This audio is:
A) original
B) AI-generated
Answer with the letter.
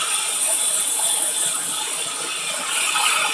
A